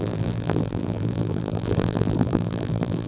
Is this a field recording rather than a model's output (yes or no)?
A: no